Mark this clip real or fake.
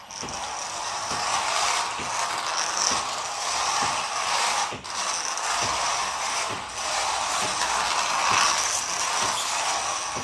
real